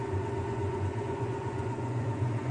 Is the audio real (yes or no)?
no